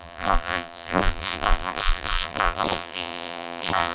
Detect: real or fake fake